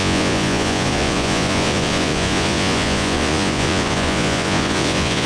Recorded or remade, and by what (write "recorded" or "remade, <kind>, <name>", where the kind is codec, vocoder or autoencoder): remade, vocoder, Vocos